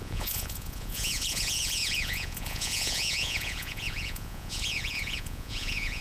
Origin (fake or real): fake